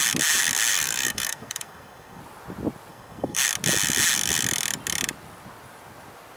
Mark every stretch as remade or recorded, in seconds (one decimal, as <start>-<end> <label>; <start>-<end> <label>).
0.0-0.7 recorded; 0.7-2.2 remade; 2.2-2.9 recorded; 2.9-3.4 remade; 3.4-6.4 recorded